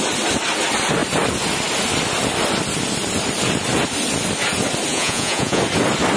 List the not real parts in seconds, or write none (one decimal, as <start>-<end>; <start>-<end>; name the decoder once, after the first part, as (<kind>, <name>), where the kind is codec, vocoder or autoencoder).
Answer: 4.9-5.6 (vocoder, Vocos)